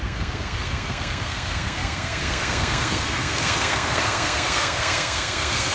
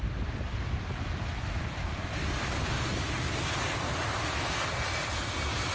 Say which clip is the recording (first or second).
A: second